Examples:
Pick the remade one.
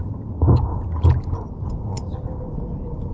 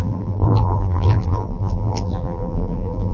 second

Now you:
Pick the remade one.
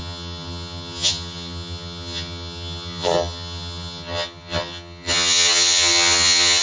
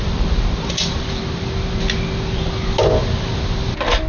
first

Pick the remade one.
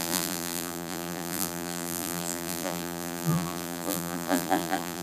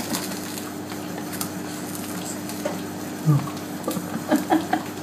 first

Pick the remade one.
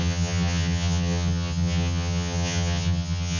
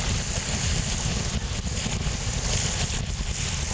first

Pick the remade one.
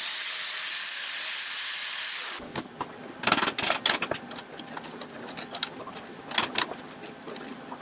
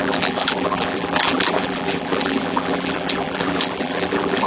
second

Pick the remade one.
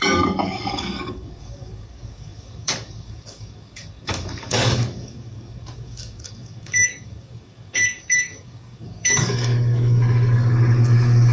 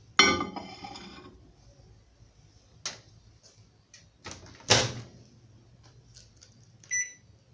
first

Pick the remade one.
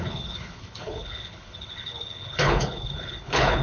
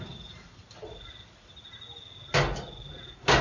first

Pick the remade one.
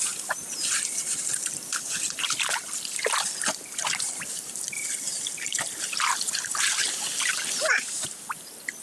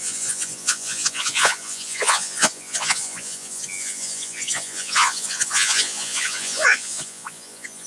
second